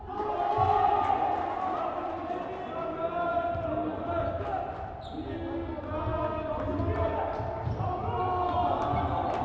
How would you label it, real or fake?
real